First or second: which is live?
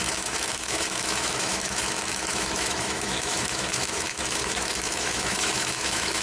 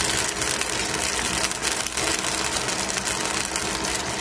second